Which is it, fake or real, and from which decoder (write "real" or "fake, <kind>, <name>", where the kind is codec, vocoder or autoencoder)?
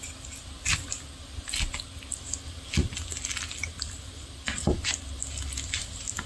real